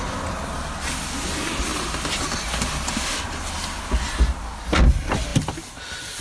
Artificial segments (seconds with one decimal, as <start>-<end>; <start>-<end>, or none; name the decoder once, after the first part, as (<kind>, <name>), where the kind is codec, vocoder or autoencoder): none